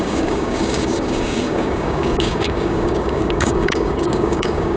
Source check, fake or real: fake